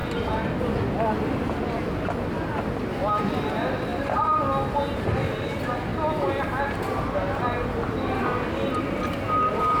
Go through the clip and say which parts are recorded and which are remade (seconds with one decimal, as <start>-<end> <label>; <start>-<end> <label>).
0.0-9.8 recorded

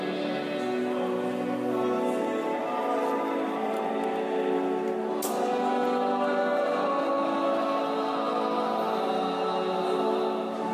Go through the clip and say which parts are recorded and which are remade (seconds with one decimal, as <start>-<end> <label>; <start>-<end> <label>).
0.0-2.6 recorded; 2.6-3.9 remade; 3.9-10.7 recorded

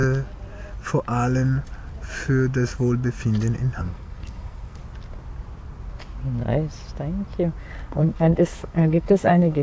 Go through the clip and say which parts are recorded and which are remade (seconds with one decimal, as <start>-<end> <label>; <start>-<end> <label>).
0.0-3.8 recorded; 3.8-4.8 remade; 4.8-7.6 recorded; 7.6-9.6 remade

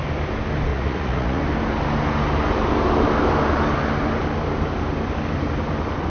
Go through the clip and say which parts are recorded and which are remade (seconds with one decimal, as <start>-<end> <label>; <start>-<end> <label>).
0.0-0.7 recorded; 0.7-1.4 remade; 1.4-6.1 recorded

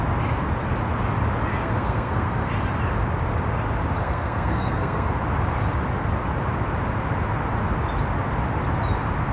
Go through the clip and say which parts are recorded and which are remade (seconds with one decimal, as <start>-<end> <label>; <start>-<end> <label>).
0.0-1.5 recorded; 1.5-2.5 remade; 2.5-4.0 recorded; 4.0-5.1 remade; 5.1-9.3 recorded

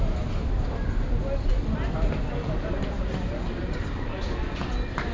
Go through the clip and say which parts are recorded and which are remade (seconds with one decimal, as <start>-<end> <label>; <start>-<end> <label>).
0.0-5.1 recorded

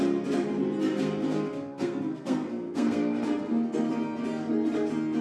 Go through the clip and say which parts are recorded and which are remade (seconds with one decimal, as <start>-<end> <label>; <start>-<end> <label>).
0.0-0.8 recorded; 0.8-3.9 remade; 3.9-5.2 recorded

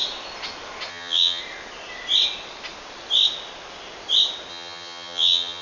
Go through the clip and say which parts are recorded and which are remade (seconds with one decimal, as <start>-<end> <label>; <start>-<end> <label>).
0.0-0.9 recorded; 0.9-1.4 remade; 1.4-4.5 recorded; 4.5-5.6 remade